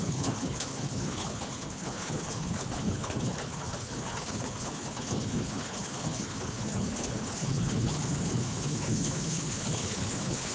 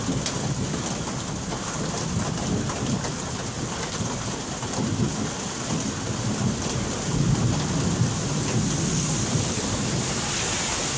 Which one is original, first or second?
second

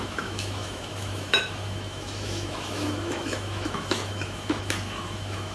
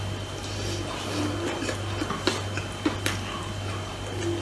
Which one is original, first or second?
second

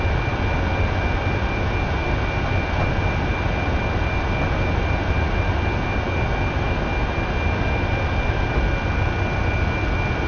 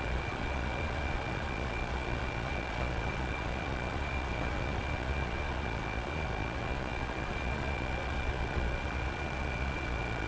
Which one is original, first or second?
first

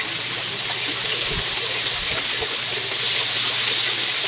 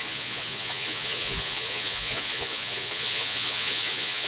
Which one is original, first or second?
first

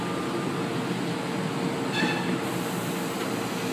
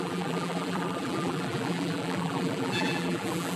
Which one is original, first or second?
first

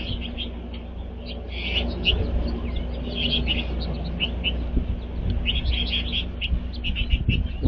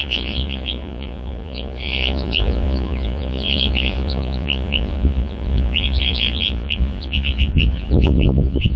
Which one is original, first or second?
first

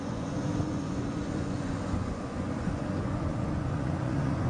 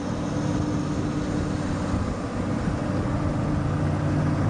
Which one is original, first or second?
second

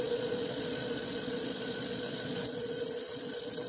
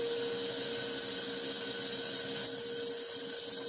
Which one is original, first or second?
second